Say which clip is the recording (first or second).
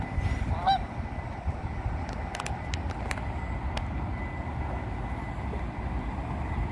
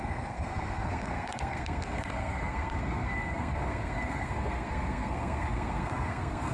first